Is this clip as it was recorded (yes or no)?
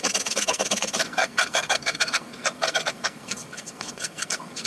no